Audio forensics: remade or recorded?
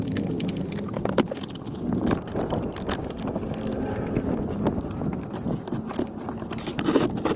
recorded